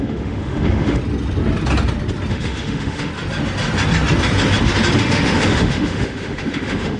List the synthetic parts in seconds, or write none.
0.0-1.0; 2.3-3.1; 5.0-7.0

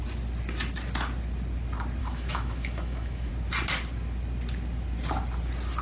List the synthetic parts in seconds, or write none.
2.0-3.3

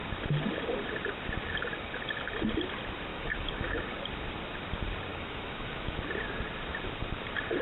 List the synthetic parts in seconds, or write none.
3.1-3.8; 5.1-6.0